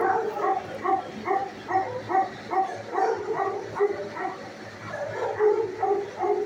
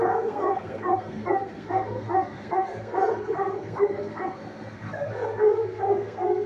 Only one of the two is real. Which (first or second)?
first